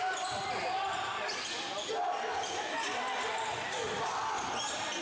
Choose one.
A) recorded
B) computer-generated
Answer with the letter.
A